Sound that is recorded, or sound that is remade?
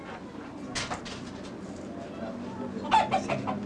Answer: recorded